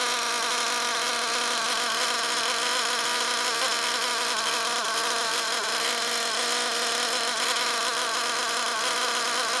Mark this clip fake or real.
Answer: real